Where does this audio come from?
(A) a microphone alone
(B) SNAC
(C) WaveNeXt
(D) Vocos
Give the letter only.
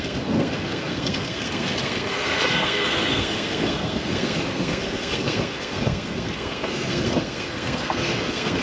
B